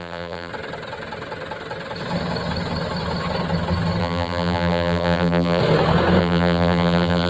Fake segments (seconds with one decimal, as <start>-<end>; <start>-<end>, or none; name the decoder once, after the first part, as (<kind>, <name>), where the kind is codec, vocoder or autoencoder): 0.0-0.5 (vocoder, BigVGAN v2); 4.0-5.6; 6.2-7.3